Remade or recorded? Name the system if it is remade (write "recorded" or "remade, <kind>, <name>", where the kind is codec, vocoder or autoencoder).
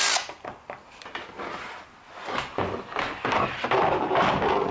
recorded